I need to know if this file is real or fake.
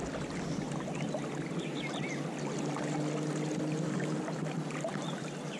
real